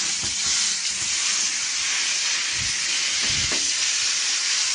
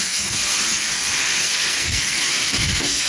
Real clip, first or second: first